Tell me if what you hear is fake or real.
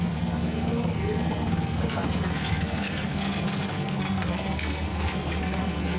fake